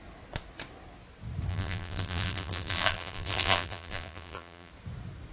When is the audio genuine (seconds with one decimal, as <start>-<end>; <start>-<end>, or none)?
0.0-1.5; 4.7-5.3

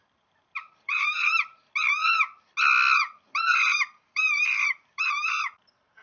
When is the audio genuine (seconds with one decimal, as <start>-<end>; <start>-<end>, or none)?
1.6-3.1

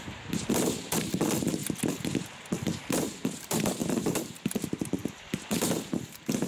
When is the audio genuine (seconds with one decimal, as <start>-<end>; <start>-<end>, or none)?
1.6-2.8

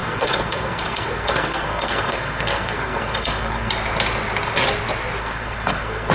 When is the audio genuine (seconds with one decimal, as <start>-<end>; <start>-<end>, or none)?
3.7-5.2